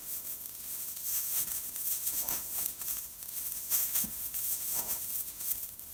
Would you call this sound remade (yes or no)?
yes